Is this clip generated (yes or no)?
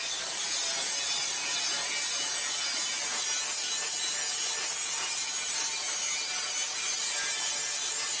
no